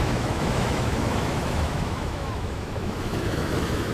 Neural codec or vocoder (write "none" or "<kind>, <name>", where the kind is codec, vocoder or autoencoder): autoencoder, DAC-VAE